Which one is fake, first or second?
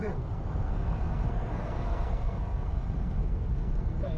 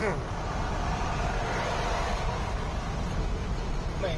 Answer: first